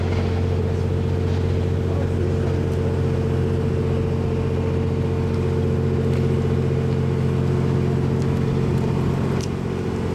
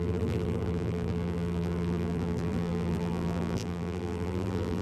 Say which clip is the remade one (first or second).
second